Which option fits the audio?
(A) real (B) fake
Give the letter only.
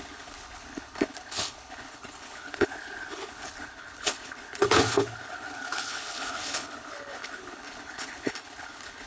B